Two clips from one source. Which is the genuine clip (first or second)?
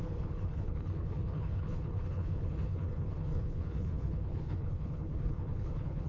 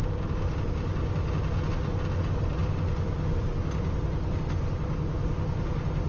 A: second